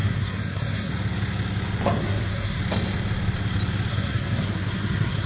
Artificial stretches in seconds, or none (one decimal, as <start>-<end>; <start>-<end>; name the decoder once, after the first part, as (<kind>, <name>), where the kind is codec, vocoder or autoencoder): 0.0-0.9 (codec, SNAC); 2.0-2.6; 3.9-5.3